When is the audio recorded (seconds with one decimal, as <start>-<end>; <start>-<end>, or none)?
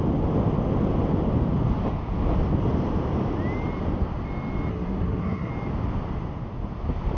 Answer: 0.0-4.7; 5.5-7.2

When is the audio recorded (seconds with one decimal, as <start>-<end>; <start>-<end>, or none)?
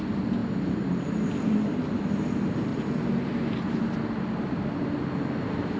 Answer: 0.0-0.4; 1.8-2.7; 3.8-5.8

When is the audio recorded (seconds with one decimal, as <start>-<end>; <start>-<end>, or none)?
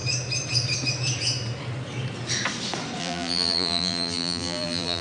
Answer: 0.0-3.0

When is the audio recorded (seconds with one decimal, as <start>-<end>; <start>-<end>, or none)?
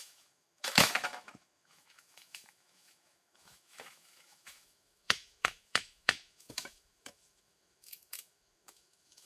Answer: none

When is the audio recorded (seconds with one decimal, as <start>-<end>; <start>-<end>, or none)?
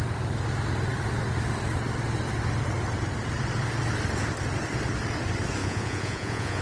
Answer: 0.0-5.6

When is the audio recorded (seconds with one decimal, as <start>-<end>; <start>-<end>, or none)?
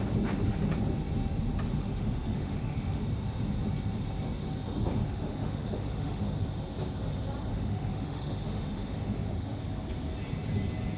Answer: 0.0-1.8; 3.0-5.0; 6.2-7.5; 9.6-11.0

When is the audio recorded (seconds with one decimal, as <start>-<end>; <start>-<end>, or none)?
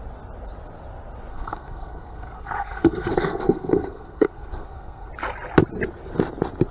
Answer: 0.0-1.3; 5.1-6.7